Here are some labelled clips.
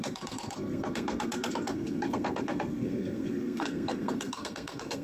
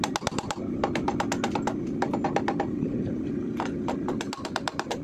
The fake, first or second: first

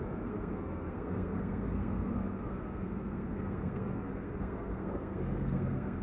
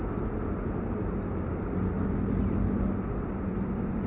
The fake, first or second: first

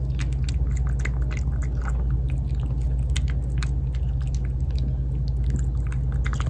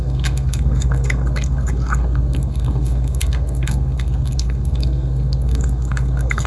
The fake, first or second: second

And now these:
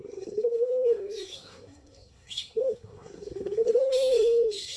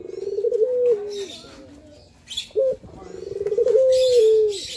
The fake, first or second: first